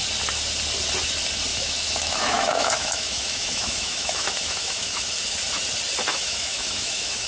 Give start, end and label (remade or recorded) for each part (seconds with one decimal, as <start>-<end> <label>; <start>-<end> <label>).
0.0-1.5 recorded; 1.5-5.1 remade; 5.1-6.1 recorded; 6.1-7.3 remade